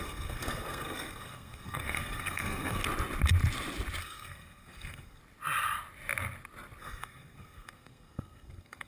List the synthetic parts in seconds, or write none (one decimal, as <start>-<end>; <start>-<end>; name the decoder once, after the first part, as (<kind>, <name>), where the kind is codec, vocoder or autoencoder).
0.0-2.8 (codec, SNAC); 4.0-5.2; 6.8-8.9